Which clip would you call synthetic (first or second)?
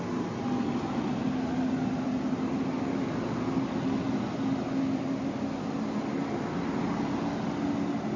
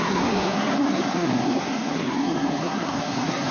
second